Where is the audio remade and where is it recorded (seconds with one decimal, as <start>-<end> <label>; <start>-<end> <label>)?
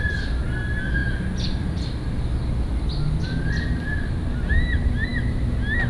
0.0-5.9 recorded